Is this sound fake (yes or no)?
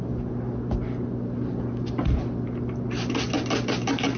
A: no